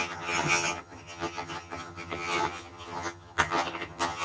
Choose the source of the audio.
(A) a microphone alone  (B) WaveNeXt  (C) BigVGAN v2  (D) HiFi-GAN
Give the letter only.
D